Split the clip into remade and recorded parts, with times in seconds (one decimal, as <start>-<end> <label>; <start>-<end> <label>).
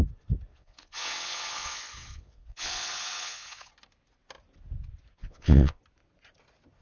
0.0-0.5 recorded; 0.5-3.7 remade; 3.7-5.1 recorded; 5.1-5.8 remade; 5.8-6.8 recorded